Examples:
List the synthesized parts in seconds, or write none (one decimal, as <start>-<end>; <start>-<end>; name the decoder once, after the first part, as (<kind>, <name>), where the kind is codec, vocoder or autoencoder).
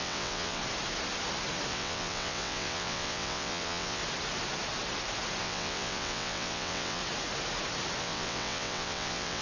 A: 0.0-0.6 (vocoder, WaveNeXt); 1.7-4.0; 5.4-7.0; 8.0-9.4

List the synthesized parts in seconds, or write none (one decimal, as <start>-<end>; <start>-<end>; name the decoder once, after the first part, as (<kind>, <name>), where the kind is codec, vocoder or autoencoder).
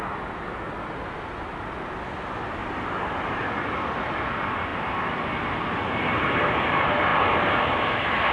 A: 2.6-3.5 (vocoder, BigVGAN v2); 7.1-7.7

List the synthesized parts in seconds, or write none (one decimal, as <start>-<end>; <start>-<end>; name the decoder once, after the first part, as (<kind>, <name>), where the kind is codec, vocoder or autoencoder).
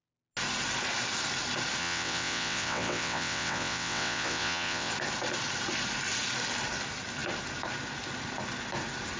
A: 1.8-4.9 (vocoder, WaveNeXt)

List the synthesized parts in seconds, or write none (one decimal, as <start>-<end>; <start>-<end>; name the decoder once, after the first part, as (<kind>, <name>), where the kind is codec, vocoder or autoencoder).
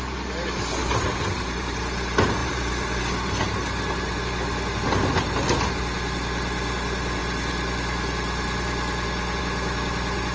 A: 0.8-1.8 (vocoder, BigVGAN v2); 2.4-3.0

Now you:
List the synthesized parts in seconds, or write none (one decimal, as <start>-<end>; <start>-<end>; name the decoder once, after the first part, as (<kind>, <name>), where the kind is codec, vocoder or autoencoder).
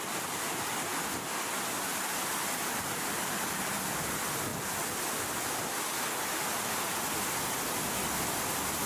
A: none